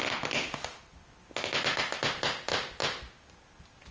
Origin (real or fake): real